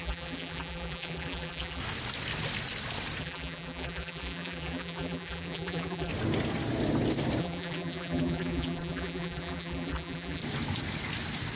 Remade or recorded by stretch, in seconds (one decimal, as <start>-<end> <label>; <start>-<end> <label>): 0.0-1.8 remade; 1.8-3.2 recorded; 3.2-6.1 remade; 6.1-7.4 recorded; 7.4-10.4 remade; 10.4-11.6 recorded